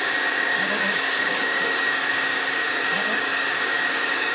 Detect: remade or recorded remade